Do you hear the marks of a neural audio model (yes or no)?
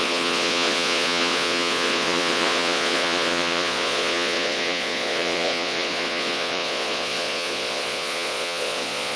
yes